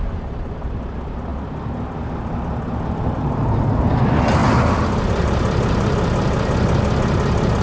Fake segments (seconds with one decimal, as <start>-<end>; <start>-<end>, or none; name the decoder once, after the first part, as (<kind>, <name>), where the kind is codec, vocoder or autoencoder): none